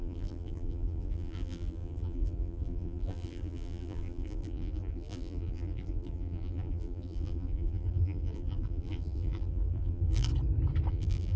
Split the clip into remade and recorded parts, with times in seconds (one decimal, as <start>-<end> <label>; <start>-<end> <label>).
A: 0.0-10.3 remade; 10.3-10.9 recorded; 10.9-11.4 remade

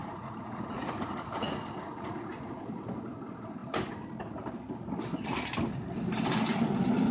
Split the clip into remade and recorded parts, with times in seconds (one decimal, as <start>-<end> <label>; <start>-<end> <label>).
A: 0.0-2.3 remade; 2.3-7.1 recorded

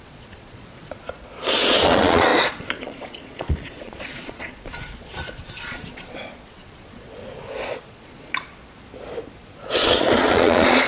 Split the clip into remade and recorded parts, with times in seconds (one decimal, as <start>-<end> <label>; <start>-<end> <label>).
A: 0.0-8.6 remade; 8.6-9.4 recorded; 9.4-10.9 remade

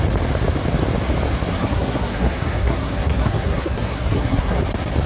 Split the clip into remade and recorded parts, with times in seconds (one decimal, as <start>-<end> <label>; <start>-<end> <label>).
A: 0.0-1.5 recorded; 1.5-4.6 remade; 4.6-5.1 recorded

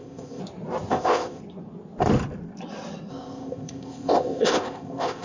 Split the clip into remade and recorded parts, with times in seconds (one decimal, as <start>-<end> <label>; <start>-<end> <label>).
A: 0.0-0.4 remade; 0.4-0.9 recorded; 0.9-1.4 remade; 1.4-3.1 recorded; 3.1-5.2 remade

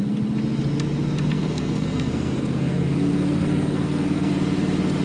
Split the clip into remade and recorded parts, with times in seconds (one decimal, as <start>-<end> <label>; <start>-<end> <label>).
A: 0.0-1.3 recorded; 1.3-4.3 remade; 4.3-5.0 recorded